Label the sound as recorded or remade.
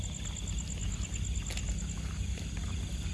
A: recorded